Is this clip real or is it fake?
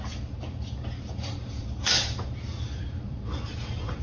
fake